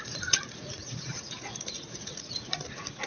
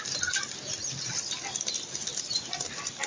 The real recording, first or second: second